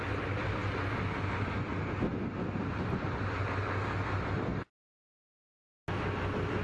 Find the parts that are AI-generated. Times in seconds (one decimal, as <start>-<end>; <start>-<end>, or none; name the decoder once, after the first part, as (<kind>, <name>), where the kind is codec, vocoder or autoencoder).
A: 4.5-5.4 (vocoder, BigVGAN v2)